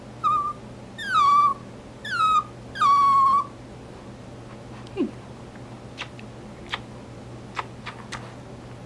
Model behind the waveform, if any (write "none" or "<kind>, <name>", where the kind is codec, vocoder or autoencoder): none